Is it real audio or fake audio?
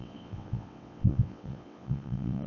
fake